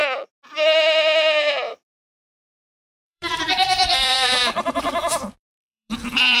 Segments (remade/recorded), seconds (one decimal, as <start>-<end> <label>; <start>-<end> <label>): 0.0-1.7 recorded; 1.7-4.4 remade; 4.4-5.4 recorded; 5.4-6.4 remade